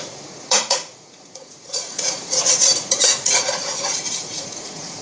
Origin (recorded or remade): remade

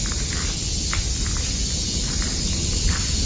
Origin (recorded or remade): recorded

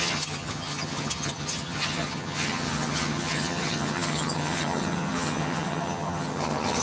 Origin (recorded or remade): remade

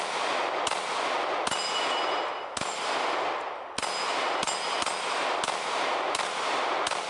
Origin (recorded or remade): recorded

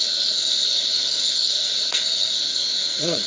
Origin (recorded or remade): remade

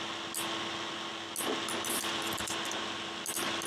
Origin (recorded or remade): recorded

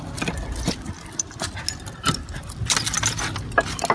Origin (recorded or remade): recorded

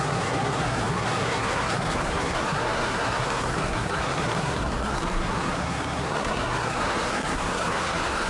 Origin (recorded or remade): remade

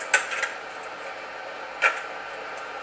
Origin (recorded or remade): recorded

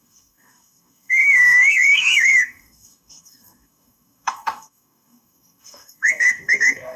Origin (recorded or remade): remade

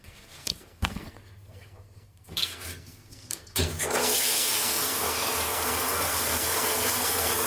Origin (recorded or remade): remade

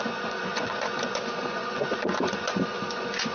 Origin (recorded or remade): remade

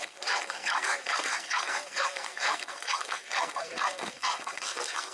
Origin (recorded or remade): remade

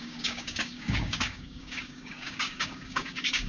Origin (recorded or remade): remade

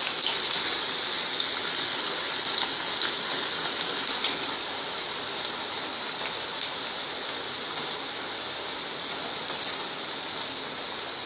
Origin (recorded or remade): recorded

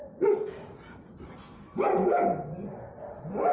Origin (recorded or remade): recorded